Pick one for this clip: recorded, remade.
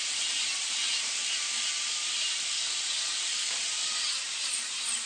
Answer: remade